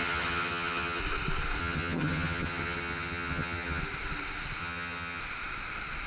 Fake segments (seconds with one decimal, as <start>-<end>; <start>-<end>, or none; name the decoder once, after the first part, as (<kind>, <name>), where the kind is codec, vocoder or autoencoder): 0.0-1.0 (vocoder, HiFi-GAN); 1.6-3.8; 4.6-5.2